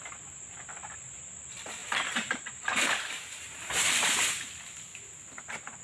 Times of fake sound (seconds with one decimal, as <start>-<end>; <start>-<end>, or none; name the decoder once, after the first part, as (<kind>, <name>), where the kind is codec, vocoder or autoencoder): 1.8-4.3 (vocoder, BigVGAN v2)